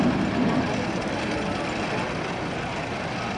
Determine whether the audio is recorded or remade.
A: recorded